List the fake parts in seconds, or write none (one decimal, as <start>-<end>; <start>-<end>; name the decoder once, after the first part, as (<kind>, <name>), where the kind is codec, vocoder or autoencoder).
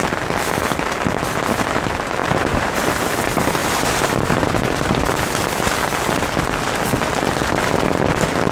2.2-2.9 (vocoder, BigVGAN v2); 3.6-4.7